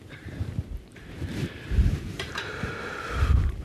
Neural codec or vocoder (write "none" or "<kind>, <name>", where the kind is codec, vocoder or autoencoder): vocoder, BigVGAN v2